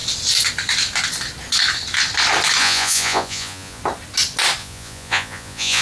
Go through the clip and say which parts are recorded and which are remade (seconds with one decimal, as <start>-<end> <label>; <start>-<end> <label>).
0.0-2.6 recorded; 2.6-3.8 remade; 3.8-4.6 recorded; 4.6-5.8 remade